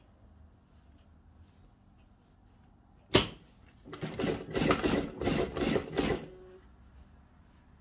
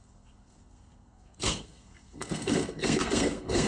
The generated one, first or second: second